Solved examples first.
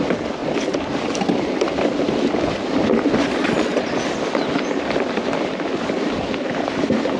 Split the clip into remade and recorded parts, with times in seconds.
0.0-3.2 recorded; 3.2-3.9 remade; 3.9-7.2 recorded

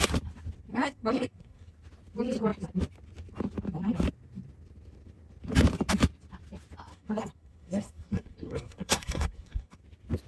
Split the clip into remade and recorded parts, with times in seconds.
0.0-0.7 recorded; 0.7-1.7 remade; 1.7-6.9 recorded; 6.9-9.8 remade; 9.8-10.3 recorded

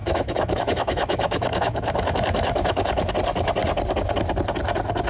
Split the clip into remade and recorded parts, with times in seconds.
0.0-3.1 remade; 3.1-5.1 recorded

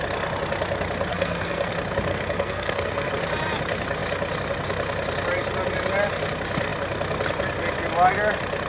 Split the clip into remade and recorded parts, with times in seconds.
0.0-1.1 recorded; 1.1-1.7 remade; 1.7-2.1 recorded; 2.1-3.1 remade; 3.1-8.7 recorded

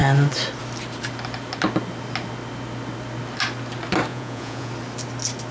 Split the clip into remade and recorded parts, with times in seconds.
0.0-4.1 recorded; 4.1-4.7 remade; 4.7-5.5 recorded

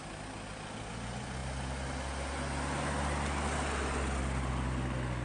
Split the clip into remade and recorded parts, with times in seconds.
0.0-5.2 recorded

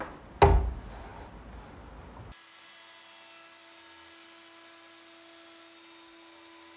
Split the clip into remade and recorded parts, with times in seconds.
0.0-6.8 recorded

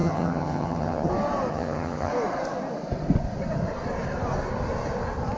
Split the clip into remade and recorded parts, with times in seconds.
0.0-1.1 remade; 1.1-1.5 recorded; 1.5-2.1 remade; 2.1-5.4 recorded